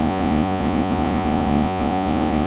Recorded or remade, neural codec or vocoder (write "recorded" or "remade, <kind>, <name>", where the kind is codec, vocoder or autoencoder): remade, vocoder, Vocos